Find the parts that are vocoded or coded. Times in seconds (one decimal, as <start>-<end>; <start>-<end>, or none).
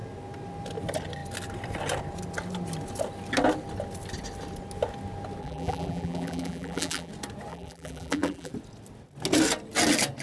5.4-7.1; 7.5-8.5